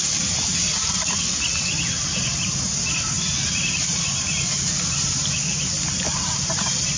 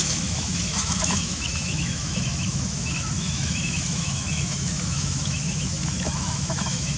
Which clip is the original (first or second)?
first